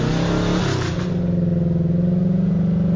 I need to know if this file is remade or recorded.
recorded